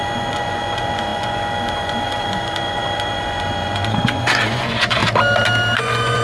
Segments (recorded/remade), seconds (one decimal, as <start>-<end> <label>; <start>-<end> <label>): 0.0-5.0 remade; 5.0-5.8 recorded; 5.8-6.2 remade